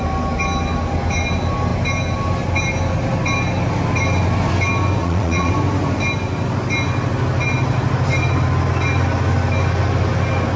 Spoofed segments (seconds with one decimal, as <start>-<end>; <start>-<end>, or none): 5.0-5.5